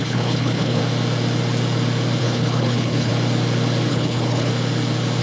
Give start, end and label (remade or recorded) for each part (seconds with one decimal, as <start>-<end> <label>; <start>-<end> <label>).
0.0-0.8 remade; 0.8-2.2 recorded; 2.2-3.1 remade; 3.1-3.9 recorded; 3.9-4.5 remade; 4.5-5.2 recorded

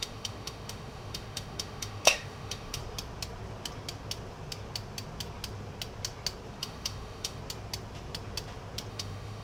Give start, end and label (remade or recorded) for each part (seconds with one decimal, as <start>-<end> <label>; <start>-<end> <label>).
0.0-2.8 remade; 2.8-6.6 recorded; 6.6-7.4 remade; 7.4-8.9 recorded; 8.9-9.4 remade

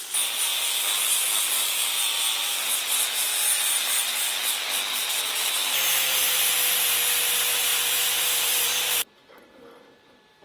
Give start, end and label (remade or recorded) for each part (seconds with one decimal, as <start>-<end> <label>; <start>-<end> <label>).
0.0-0.5 remade; 0.5-5.5 recorded; 5.5-10.4 remade

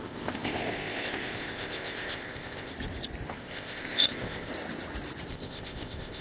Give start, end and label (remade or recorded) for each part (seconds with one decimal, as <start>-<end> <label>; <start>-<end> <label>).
0.0-2.7 remade; 2.7-3.3 recorded; 3.3-4.5 remade; 4.5-5.3 recorded; 5.3-6.2 remade

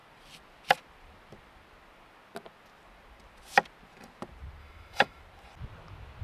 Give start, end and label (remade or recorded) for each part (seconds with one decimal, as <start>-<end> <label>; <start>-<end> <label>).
0.0-4.6 recorded; 4.6-5.2 remade; 5.2-6.2 recorded

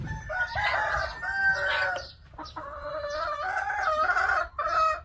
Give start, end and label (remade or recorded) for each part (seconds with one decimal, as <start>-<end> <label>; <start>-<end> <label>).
0.0-5.0 recorded

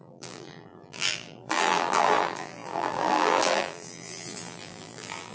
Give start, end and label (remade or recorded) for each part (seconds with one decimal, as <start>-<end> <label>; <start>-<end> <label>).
0.0-5.3 remade

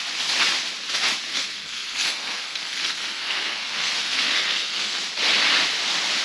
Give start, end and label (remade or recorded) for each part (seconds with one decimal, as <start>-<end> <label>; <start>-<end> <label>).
0.0-1.3 recorded; 1.3-5.0 remade; 5.0-6.2 recorded